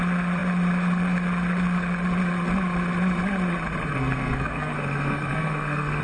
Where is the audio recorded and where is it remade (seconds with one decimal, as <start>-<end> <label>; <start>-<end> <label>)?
0.0-3.9 recorded; 3.9-6.0 remade